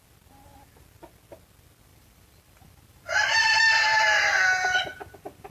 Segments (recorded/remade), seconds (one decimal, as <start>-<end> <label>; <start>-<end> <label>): 0.0-1.9 recorded; 1.9-5.5 remade